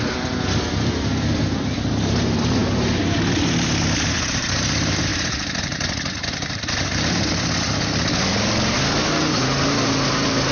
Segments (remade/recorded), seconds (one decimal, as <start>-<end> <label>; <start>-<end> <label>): 0.0-10.5 remade